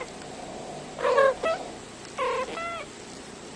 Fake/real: real